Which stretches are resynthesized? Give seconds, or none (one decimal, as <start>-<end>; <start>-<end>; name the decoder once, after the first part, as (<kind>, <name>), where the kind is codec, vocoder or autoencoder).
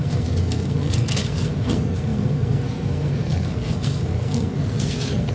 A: 0.0-5.3 (codec, SNAC)